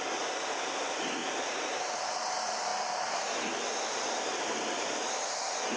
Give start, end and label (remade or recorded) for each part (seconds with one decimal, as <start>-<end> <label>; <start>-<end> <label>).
0.0-1.2 recorded; 1.2-1.8 remade; 1.8-2.7 recorded; 2.7-4.6 remade; 4.6-5.8 recorded